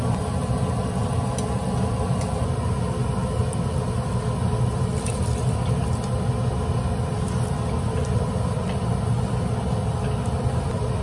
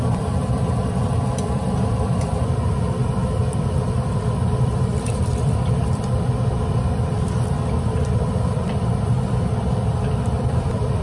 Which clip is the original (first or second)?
first